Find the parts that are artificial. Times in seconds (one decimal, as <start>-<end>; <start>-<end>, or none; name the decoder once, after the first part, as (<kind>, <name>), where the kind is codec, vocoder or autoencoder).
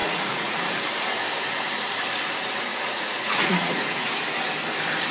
0.0-0.6 (vocoder, Vocos); 2.7-4.1